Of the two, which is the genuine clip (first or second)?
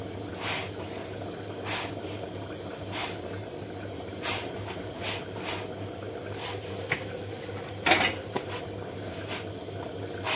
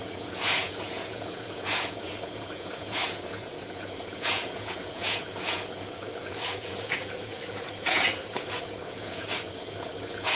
first